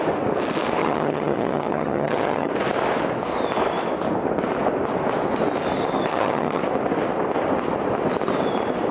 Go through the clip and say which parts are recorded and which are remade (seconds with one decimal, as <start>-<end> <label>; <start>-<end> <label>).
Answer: 0.0-0.8 recorded; 0.8-2.5 remade; 2.5-6.1 recorded; 6.1-6.6 remade; 6.6-8.9 recorded